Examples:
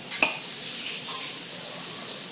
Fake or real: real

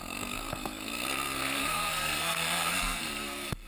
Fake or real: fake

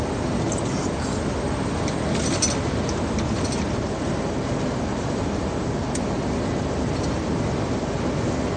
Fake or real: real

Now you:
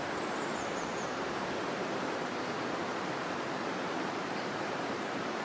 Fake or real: fake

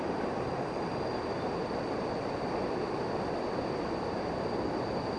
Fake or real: real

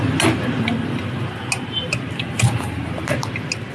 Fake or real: real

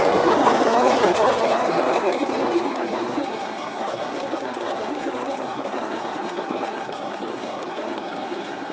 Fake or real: fake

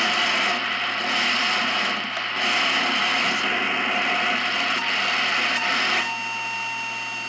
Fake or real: real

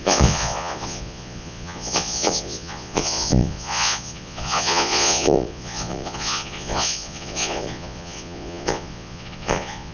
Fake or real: fake